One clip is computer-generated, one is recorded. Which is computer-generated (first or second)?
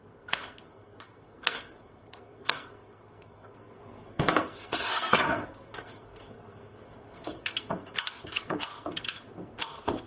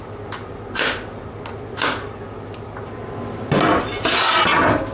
first